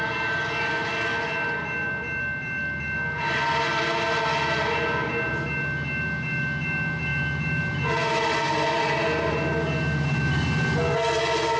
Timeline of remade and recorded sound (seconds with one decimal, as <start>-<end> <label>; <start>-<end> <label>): 0.0-11.6 recorded